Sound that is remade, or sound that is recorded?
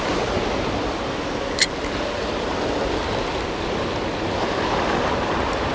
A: recorded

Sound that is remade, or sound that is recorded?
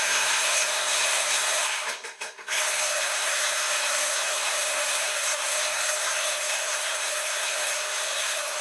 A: remade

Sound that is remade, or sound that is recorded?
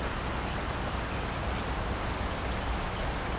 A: recorded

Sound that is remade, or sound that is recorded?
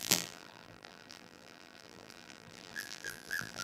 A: remade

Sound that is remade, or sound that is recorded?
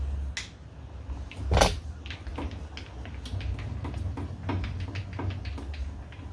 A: recorded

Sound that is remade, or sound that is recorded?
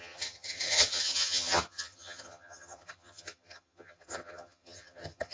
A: remade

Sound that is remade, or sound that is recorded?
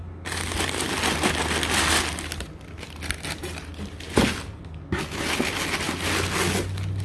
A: recorded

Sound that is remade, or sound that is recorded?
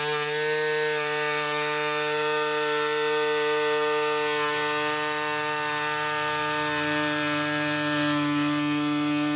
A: recorded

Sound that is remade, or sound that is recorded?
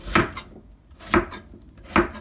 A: recorded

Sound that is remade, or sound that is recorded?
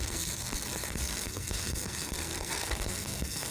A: remade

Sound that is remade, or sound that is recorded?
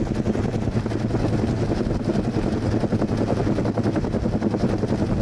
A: recorded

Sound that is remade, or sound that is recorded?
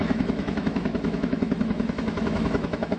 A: remade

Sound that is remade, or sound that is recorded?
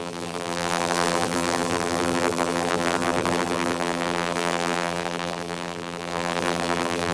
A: remade